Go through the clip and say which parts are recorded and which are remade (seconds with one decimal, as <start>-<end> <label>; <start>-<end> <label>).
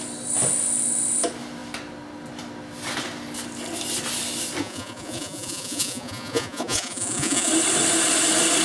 0.0-4.6 recorded; 4.6-7.5 remade; 7.5-8.6 recorded